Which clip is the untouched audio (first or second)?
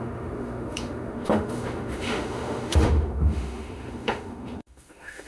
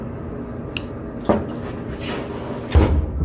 second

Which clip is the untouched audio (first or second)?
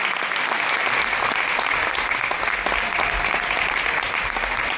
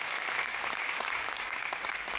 first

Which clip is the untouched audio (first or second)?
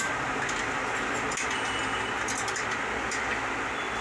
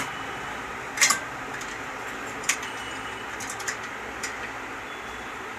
first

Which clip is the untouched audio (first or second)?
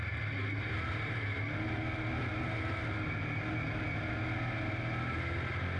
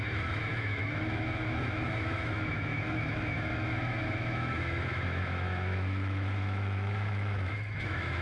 first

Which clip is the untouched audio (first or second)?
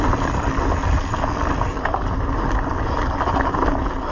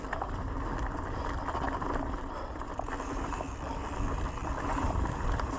first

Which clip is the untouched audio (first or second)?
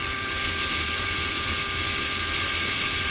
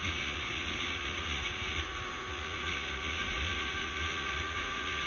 first